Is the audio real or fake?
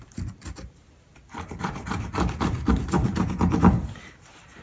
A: fake